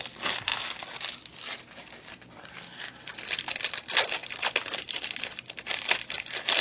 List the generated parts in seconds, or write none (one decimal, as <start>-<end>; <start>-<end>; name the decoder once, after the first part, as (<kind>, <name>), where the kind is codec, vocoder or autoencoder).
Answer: 0.0-0.5 (vocoder, BigVGAN v2); 2.1-6.6